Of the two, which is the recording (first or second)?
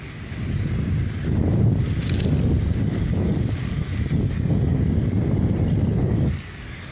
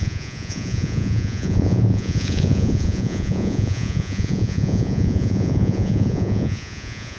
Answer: first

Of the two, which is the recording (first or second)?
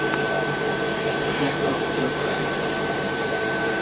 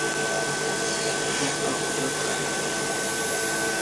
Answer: second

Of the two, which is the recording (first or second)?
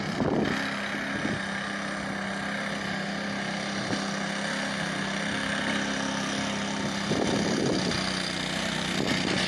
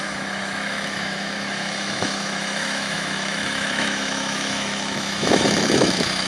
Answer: first